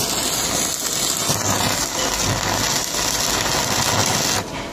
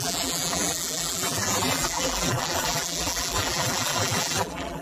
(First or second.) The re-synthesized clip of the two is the second